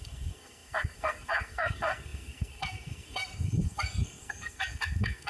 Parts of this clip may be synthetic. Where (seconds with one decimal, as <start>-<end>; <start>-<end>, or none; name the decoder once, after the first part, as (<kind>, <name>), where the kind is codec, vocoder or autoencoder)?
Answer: 0.0-5.3 (codec, SNAC)